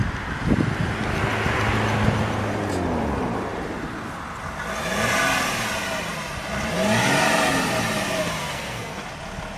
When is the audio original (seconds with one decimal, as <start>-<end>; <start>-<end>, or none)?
0.0-8.4; 9.1-9.6